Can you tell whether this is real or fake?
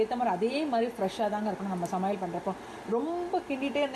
real